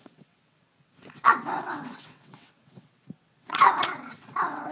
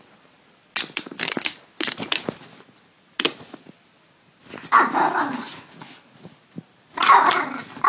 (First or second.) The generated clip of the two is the first